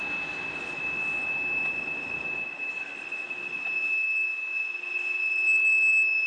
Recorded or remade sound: recorded